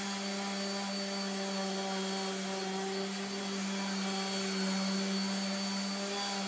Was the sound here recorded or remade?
recorded